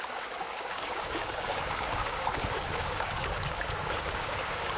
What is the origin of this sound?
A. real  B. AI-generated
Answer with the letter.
B